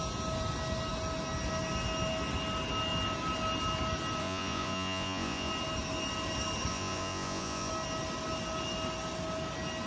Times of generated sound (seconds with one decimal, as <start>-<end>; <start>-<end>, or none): 4.2-5.5; 6.7-7.7